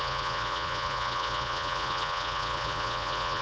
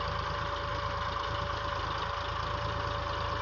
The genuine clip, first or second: second